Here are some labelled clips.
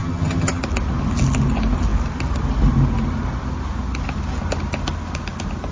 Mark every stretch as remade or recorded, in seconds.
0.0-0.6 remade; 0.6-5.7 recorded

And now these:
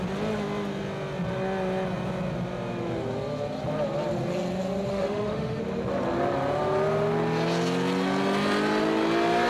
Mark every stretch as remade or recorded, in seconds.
0.0-4.9 recorded; 4.9-5.6 remade; 5.6-9.5 recorded